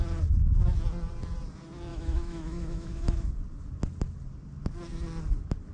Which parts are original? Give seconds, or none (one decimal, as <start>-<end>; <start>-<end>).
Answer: 0.0-1.9; 3.3-5.7

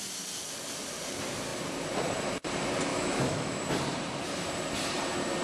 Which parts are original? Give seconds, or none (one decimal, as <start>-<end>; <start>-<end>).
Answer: 0.0-2.9; 3.6-5.4

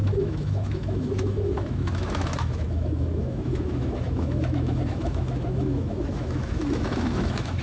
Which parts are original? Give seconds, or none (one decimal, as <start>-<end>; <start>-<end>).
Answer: none

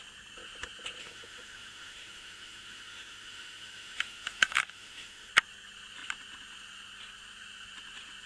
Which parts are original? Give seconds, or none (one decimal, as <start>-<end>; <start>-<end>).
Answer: 0.0-1.0; 5.3-8.3

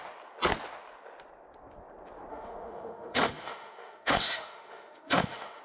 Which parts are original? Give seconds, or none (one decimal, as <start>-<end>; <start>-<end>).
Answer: 0.0-2.3